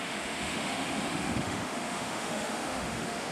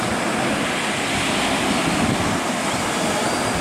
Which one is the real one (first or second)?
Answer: second